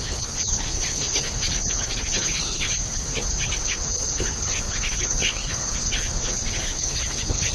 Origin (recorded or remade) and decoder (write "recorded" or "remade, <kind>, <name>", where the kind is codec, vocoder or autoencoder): remade, codec, HILCodec